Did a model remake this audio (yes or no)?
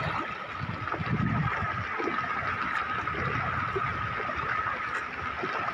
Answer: no